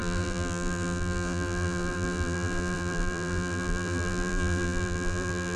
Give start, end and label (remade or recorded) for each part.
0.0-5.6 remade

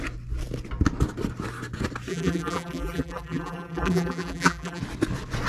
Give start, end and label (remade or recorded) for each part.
0.0-2.1 recorded; 2.1-4.8 remade; 4.8-5.5 recorded

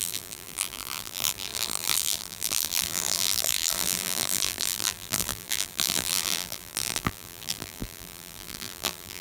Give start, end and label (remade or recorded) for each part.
0.0-9.2 remade

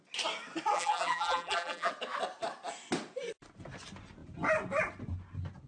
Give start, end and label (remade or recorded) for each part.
0.0-0.7 recorded; 0.7-1.9 remade; 1.9-5.7 recorded

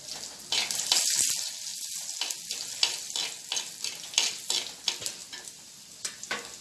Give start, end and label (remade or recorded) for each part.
0.0-5.2 recorded; 5.2-6.0 remade; 6.0-6.6 recorded

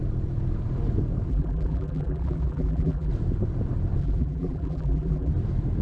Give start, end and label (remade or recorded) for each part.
0.0-1.3 recorded; 1.3-3.1 remade; 3.1-4.0 recorded; 4.0-5.3 remade; 5.3-5.8 recorded

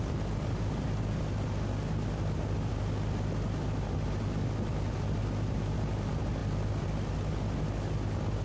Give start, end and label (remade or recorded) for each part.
0.0-8.4 recorded

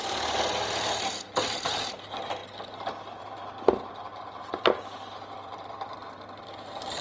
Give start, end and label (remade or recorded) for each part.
0.0-2.4 recorded; 2.4-6.6 remade; 6.6-7.0 recorded